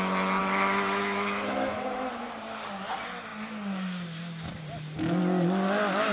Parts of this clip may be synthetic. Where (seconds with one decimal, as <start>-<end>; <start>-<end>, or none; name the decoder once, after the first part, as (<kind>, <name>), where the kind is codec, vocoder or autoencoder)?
0.4-2.2 (autoencoder, DAC-VAE)